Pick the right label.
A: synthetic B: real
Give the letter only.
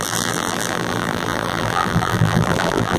A